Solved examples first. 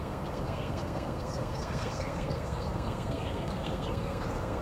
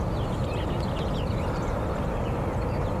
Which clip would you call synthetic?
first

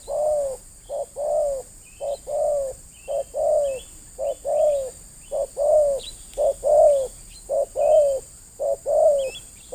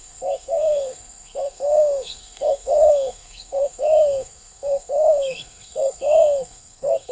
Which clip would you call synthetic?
second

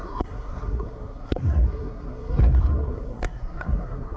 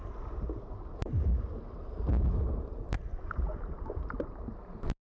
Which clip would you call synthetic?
first